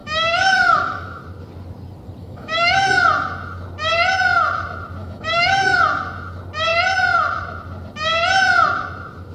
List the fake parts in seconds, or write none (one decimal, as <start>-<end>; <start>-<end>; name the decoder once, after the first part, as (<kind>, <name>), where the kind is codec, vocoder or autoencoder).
0.0-1.2 (autoencoder, DAC-VAE); 2.2-2.9; 5.0-5.8